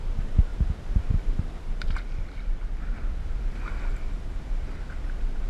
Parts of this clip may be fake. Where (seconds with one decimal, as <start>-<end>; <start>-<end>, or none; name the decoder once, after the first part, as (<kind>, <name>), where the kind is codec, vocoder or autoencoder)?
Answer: none